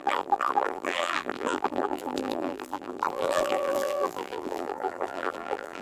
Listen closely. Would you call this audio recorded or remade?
remade